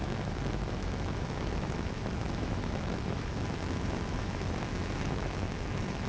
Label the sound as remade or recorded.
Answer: remade